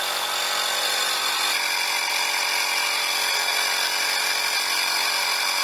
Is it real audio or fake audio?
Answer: real